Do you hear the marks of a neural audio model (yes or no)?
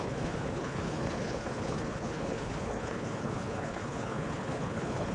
yes